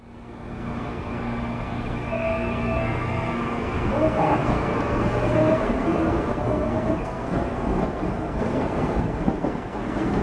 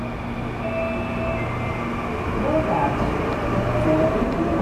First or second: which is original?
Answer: second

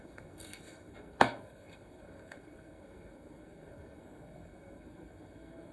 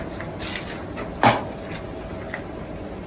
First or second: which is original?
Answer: second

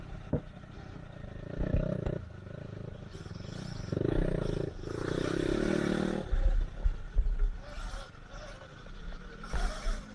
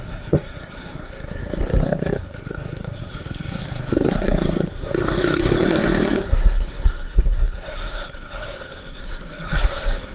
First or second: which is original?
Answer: first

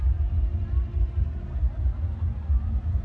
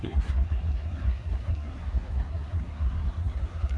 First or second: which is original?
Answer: first